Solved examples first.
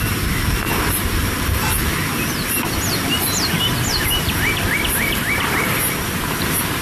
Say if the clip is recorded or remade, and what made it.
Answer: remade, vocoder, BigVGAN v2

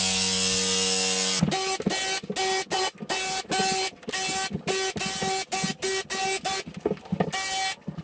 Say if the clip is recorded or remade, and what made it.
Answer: recorded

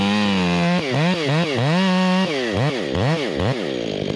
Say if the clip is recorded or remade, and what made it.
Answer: recorded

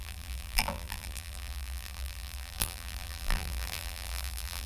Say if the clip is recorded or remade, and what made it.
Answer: remade, vocoder, BigVGAN v2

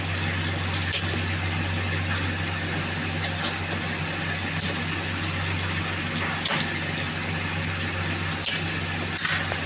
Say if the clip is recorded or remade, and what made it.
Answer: recorded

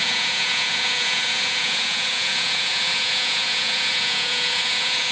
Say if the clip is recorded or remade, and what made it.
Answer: remade, vocoder, Vocos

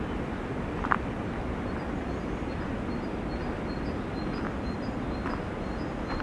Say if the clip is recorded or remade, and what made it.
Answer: recorded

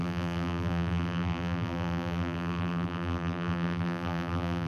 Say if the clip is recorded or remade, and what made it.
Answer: remade, vocoder, BigVGAN v2